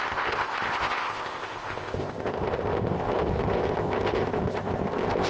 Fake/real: fake